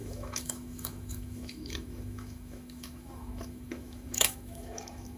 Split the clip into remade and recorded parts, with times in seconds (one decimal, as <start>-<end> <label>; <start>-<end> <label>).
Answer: 0.0-5.2 remade